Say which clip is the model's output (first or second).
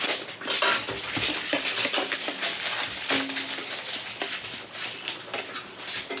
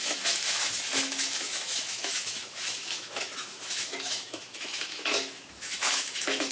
second